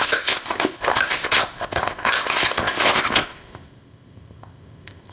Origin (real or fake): fake